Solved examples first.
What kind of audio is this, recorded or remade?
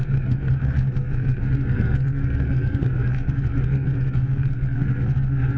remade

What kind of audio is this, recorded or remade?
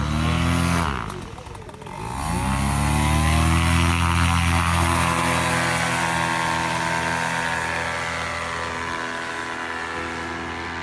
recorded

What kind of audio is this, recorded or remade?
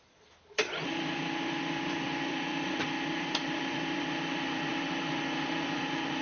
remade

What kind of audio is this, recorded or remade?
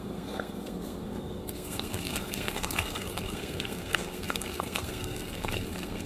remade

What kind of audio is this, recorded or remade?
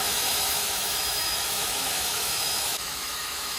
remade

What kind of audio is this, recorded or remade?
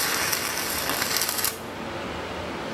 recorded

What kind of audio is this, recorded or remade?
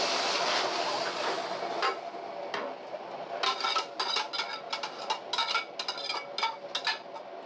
recorded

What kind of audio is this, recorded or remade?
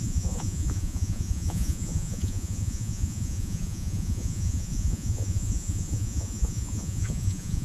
remade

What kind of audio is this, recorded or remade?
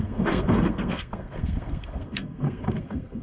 remade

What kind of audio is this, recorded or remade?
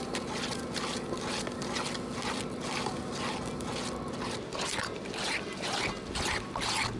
recorded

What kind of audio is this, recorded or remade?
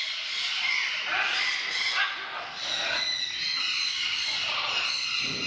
recorded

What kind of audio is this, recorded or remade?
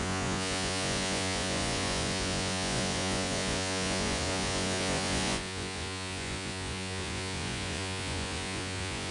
remade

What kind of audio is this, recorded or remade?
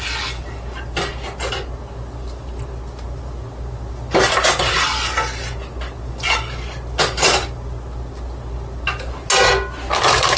recorded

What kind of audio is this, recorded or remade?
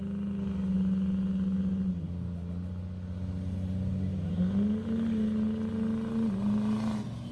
recorded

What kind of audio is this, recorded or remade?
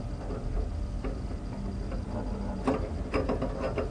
recorded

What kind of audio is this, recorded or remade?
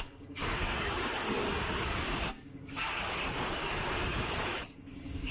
remade